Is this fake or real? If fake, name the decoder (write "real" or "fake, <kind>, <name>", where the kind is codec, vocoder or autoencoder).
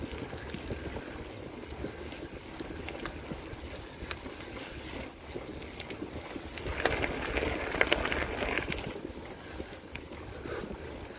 real